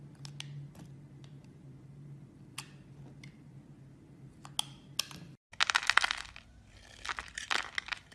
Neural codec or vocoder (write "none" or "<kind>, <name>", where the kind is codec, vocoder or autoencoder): none